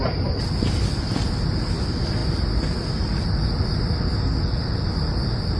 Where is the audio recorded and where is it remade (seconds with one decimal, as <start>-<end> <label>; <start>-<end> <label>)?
0.0-5.6 recorded